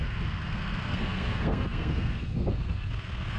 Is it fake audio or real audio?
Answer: fake